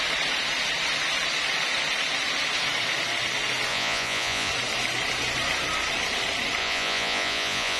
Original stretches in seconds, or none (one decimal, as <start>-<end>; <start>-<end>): 0.0-3.7; 4.5-6.6